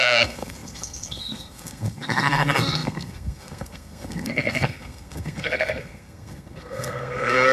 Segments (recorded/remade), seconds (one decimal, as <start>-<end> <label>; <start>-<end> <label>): 0.0-7.5 remade